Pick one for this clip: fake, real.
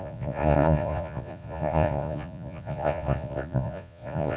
fake